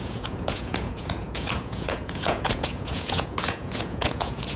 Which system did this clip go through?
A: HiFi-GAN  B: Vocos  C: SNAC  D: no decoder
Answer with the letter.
B